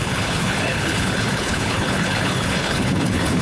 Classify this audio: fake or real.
fake